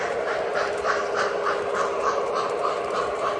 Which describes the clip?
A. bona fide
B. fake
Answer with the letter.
B